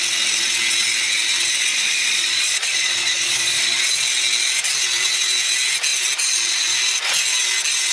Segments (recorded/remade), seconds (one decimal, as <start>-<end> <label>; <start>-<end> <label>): 0.0-1.7 recorded; 1.7-3.8 remade; 3.8-7.9 recorded